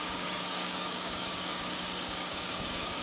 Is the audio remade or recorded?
remade